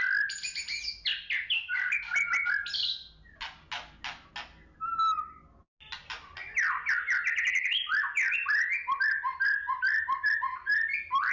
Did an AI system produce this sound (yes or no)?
no